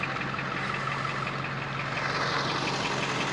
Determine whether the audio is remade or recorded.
recorded